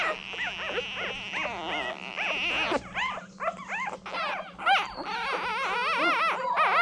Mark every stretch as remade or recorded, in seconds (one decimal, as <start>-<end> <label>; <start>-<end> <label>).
0.0-6.8 recorded